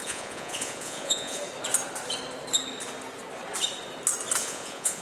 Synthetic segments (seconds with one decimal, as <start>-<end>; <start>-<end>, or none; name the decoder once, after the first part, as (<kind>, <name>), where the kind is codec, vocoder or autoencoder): 0.0-1.4 (vocoder, Vocos); 4.4-5.0